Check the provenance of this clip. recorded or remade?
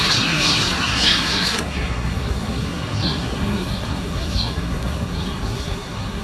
remade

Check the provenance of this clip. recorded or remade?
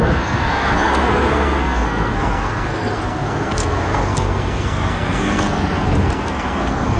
remade